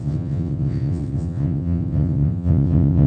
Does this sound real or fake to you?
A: fake